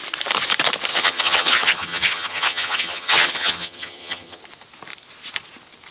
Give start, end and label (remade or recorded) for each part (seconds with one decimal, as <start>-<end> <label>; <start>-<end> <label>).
0.0-0.9 recorded; 0.9-4.4 remade; 4.4-5.9 recorded